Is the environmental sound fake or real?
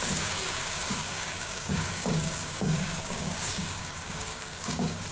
fake